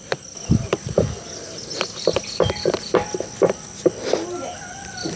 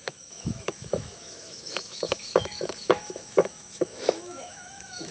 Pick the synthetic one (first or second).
second